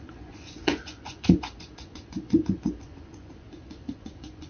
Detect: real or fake fake